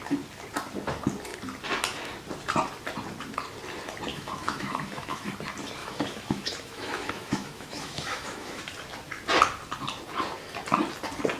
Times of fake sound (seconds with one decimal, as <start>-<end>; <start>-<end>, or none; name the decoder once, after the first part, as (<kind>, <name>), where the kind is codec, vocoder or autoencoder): 4.1-5.3 (autoencoder, DAC-VAE); 5.8-8.6